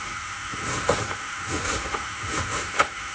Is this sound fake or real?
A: fake